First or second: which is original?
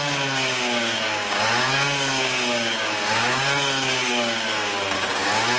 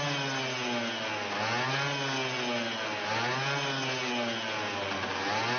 second